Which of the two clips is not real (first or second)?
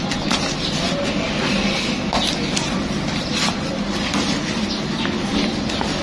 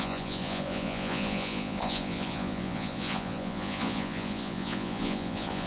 second